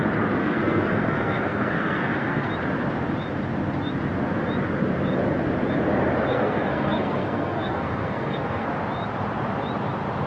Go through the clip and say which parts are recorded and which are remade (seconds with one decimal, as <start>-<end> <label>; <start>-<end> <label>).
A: 0.0-0.4 recorded; 0.4-2.5 remade; 2.5-6.3 recorded; 6.3-8.7 remade; 8.7-10.3 recorded